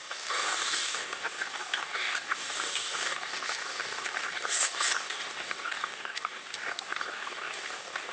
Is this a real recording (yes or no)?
no